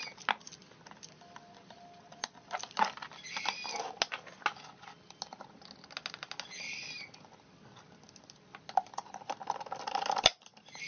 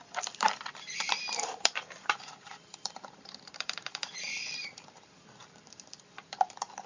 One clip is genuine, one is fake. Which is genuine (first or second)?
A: first